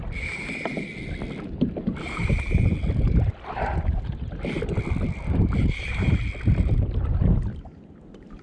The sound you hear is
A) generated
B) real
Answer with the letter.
B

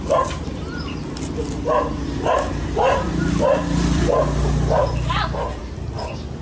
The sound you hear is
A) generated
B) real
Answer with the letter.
A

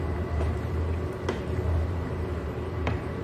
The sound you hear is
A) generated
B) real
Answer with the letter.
A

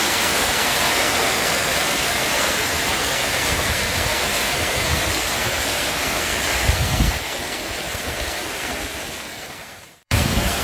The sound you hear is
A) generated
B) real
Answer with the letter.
A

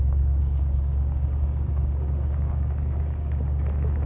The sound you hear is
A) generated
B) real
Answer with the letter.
A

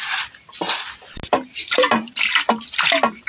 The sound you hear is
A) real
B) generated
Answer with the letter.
A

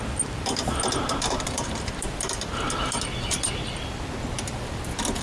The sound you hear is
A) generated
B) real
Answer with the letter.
A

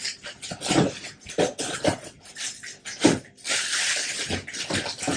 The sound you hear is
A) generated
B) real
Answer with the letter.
B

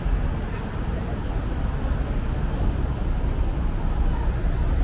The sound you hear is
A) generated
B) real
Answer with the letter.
B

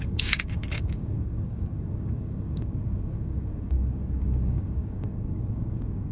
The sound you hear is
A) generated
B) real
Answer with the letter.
A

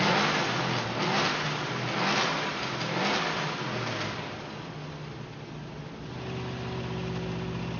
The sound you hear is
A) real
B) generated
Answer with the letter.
A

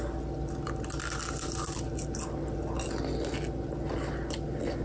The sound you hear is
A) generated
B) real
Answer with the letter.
B